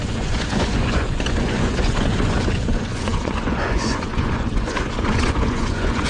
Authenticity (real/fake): fake